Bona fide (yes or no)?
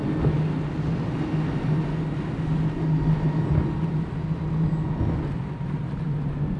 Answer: yes